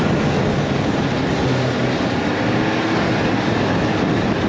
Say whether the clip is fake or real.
real